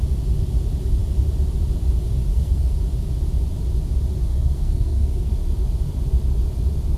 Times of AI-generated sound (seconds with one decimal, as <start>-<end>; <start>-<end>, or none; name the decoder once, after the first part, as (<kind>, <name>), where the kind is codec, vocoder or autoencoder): 2.3-2.8 (codec, SNAC); 4.3-5.3